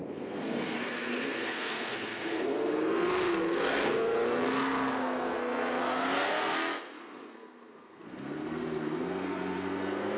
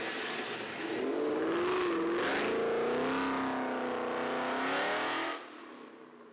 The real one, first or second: second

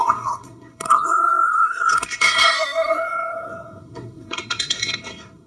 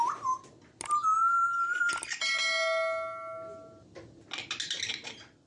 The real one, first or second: second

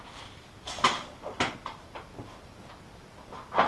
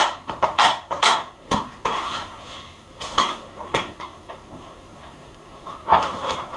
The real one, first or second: first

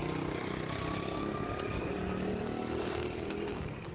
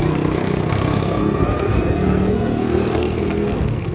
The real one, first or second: first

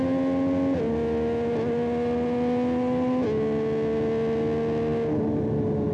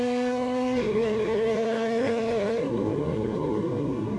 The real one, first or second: first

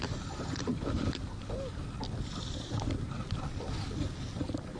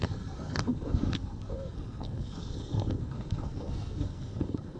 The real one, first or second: first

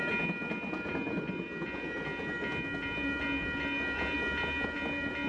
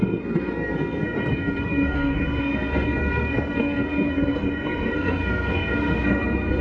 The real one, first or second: first